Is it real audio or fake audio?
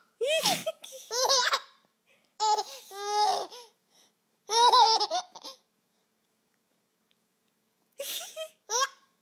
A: fake